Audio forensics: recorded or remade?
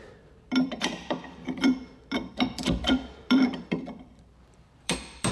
remade